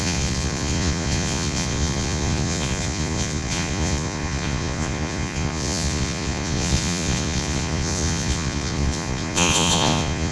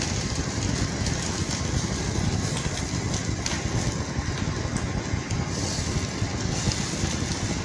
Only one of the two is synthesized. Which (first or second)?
first